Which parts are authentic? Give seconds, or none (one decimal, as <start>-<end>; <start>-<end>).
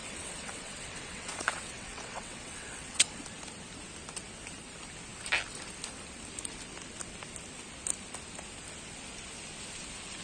3.2-10.2